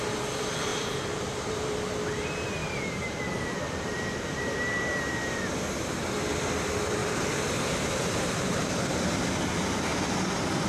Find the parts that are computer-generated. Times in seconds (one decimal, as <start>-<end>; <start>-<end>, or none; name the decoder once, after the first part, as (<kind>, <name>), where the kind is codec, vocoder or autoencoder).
0.7-1.8 (vocoder, BigVGAN v2); 2.6-5.3; 7.0-8.8